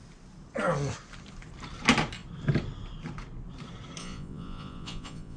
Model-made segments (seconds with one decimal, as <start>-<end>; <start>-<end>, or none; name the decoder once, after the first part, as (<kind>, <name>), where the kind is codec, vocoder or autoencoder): 4.0-5.4 (vocoder, Vocos)